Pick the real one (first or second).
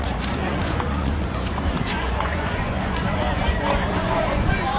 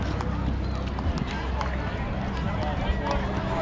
second